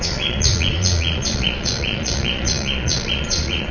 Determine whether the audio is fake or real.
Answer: fake